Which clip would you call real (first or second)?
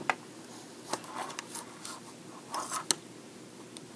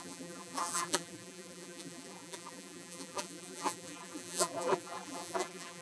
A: first